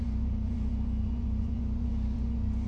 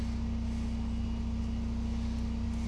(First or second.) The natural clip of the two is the second